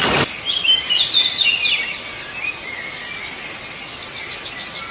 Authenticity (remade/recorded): recorded